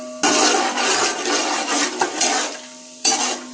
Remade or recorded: recorded